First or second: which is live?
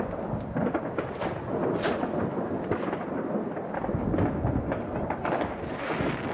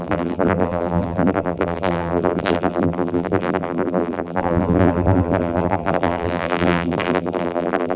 first